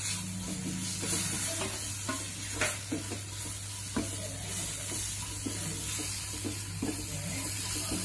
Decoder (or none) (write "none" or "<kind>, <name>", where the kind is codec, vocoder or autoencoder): none